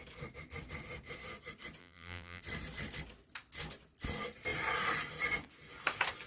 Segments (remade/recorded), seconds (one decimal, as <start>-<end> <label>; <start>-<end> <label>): 0.0-1.8 recorded; 1.8-2.4 remade; 2.4-6.3 recorded